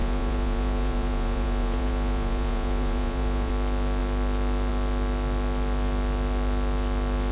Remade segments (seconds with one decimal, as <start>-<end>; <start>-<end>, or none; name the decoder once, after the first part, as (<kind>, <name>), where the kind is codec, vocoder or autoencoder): 0.0-3.5 (vocoder, Vocos)